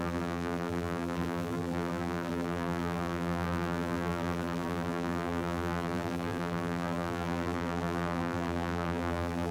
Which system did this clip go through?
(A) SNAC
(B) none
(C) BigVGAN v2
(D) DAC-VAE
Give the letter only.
C